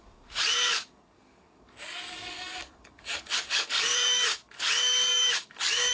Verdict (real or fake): fake